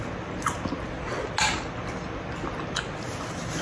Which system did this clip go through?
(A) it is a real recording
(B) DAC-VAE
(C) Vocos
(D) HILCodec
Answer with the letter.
A